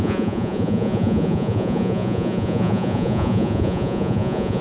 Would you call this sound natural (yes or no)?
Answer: no